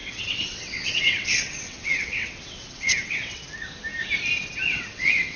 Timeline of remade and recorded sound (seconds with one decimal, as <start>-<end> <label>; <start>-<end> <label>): 0.0-3.4 remade; 3.4-4.7 recorded; 4.7-5.4 remade

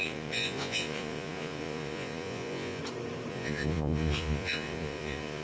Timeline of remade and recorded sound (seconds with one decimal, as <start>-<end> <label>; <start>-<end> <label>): 0.0-2.8 remade; 2.8-3.3 recorded; 3.3-5.4 remade